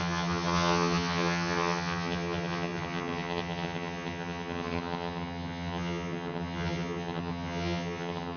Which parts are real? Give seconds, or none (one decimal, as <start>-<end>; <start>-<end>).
none